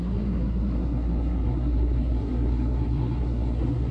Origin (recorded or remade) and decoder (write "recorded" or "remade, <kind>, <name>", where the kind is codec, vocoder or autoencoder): remade, codec, SNAC